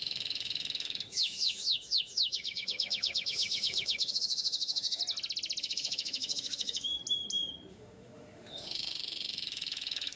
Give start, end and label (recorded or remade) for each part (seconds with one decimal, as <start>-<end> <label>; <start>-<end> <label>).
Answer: 0.0-5.0 remade; 5.0-5.6 recorded; 5.6-7.0 remade; 7.0-7.7 recorded; 7.7-10.2 remade